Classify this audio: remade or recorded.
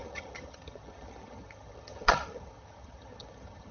remade